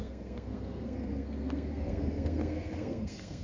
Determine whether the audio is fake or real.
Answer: fake